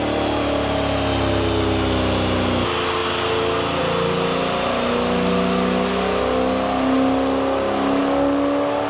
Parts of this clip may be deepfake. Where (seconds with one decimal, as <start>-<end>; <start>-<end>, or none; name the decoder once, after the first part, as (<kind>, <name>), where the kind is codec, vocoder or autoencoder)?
none